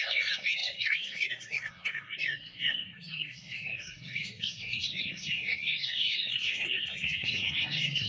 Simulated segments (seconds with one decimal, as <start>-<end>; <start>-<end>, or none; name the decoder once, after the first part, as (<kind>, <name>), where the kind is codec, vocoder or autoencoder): 0.0-8.1 (codec, SNAC)